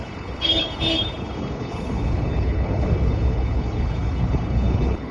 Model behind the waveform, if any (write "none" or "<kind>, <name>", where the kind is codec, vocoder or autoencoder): codec, HILCodec